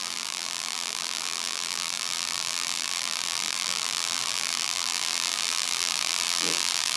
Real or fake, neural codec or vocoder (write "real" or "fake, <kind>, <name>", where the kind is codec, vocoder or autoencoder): fake, vocoder, BigVGAN v2